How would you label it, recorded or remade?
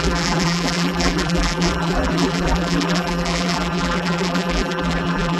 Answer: remade